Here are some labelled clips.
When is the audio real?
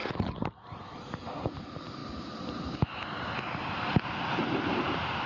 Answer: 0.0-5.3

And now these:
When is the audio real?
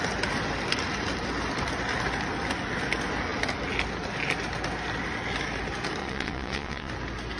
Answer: 0.0-6.0; 6.9-7.4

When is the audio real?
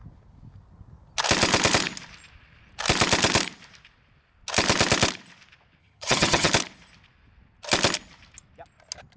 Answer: 0.0-5.8; 6.5-9.2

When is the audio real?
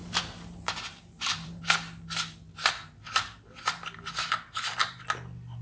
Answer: 1.6-5.6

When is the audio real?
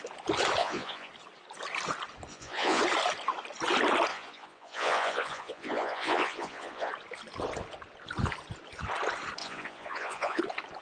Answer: 0.0-0.6; 1.1-2.3; 2.8-4.1; 6.9-9.4; 10.4-10.8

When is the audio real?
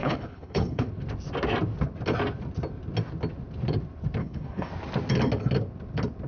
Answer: 0.9-4.2; 4.7-6.3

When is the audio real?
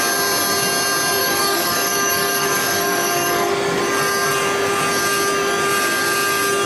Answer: 0.0-1.2; 3.8-6.7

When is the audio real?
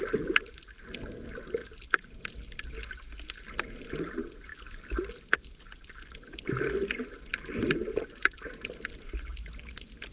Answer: 0.0-10.1